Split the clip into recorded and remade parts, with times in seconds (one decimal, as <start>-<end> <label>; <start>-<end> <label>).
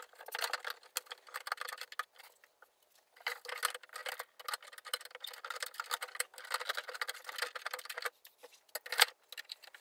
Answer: 0.0-9.8 recorded